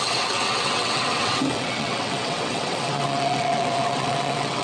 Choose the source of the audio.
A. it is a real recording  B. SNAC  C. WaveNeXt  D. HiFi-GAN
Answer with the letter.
C